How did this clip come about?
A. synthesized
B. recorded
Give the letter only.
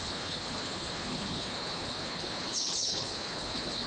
A